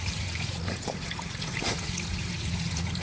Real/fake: fake